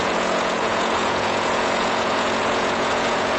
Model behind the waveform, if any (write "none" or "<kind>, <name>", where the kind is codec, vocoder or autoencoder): vocoder, Vocos